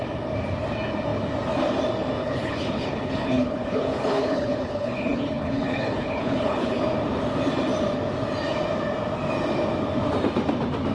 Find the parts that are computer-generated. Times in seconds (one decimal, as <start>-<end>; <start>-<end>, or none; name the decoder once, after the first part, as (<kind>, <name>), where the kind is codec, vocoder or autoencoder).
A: 2.2-6.8 (codec, HILCodec)